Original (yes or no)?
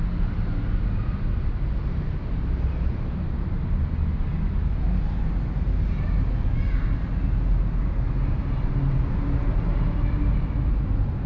yes